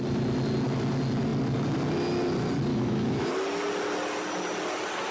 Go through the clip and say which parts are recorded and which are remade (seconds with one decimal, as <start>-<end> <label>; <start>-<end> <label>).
0.0-2.7 recorded; 2.7-3.3 remade; 3.3-5.1 recorded